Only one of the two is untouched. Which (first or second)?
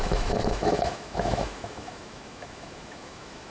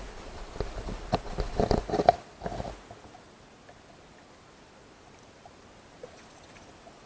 second